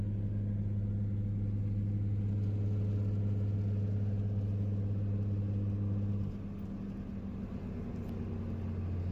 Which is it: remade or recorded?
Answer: recorded